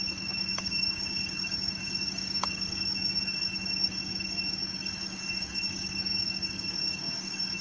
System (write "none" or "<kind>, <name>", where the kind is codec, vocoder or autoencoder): codec, DAC